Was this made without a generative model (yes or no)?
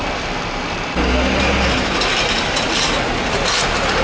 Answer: yes